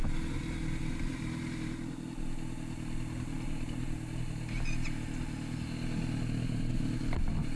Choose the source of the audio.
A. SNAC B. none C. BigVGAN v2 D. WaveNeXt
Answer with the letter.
B